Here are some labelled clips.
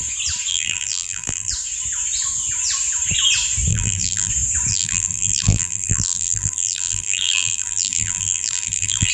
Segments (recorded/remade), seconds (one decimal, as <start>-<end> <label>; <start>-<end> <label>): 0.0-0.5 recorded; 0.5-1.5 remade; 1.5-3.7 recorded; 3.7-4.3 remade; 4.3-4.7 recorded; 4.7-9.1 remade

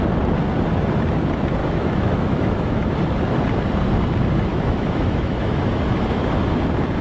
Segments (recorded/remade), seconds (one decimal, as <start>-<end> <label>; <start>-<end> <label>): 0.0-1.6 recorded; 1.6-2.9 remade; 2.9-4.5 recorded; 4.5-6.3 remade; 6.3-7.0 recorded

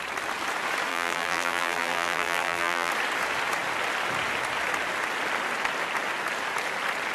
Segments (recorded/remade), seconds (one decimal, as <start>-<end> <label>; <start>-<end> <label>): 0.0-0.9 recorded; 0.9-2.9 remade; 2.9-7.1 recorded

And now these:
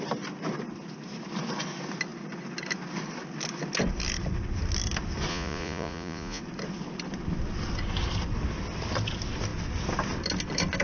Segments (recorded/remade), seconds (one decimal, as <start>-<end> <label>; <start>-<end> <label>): 0.0-5.3 recorded; 5.3-6.4 remade; 6.4-10.8 recorded